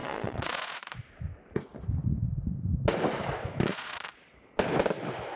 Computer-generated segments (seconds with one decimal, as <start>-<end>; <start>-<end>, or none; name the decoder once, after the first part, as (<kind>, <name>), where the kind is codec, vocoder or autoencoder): 0.0-0.9 (vocoder, Vocos); 3.7-4.3